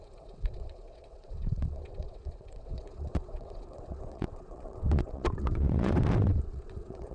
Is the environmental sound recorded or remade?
remade